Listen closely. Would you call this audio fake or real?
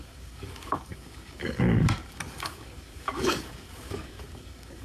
fake